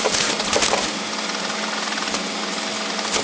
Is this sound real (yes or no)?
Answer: yes